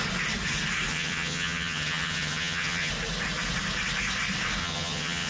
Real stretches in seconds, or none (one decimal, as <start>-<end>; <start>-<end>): 0.0-0.9; 2.9-4.6